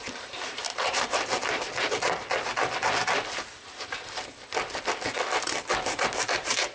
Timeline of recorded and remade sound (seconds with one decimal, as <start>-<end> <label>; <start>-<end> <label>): 0.0-1.4 remade; 1.4-5.4 recorded; 5.4-6.7 remade